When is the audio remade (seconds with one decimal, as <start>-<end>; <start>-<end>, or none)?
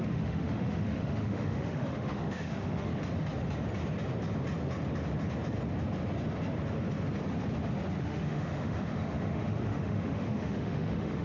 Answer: 0.0-2.9; 8.0-11.2